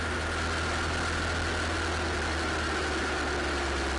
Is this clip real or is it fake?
real